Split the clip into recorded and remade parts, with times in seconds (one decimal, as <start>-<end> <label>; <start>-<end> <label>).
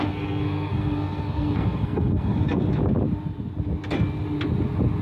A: 0.0-2.8 remade; 2.8-5.0 recorded